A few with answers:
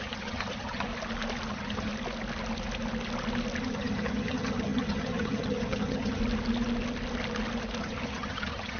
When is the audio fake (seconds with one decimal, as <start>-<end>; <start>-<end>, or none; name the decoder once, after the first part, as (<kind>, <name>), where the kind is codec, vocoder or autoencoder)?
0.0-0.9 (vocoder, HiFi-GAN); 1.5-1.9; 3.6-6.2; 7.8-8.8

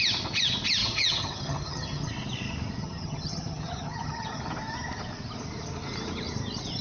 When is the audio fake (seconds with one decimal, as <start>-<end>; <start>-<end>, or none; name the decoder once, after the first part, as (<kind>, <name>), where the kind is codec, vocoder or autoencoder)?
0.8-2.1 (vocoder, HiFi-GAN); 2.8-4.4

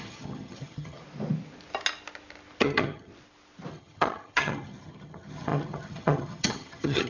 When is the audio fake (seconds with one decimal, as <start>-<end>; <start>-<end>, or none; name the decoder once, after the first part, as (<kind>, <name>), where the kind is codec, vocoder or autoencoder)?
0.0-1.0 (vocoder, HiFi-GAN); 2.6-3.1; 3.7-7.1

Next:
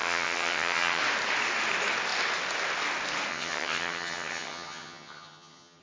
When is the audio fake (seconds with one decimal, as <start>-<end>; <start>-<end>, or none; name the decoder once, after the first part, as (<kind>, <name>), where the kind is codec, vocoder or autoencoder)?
0.0-1.0 (vocoder, HiFi-GAN); 3.3-5.8

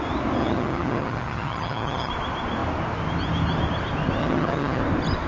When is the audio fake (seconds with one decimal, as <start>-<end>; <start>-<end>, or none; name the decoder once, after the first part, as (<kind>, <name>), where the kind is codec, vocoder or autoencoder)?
0.4-2.1 (vocoder, HiFi-GAN); 4.2-4.8